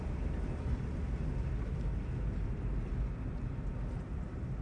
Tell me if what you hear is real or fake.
real